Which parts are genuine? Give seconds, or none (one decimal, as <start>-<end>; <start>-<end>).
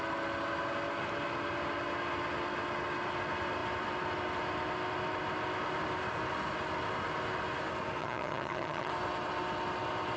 0.0-8.0; 8.9-10.2